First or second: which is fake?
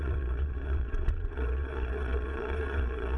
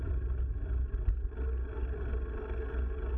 first